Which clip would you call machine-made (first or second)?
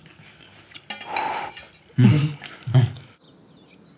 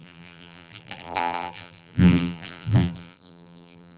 second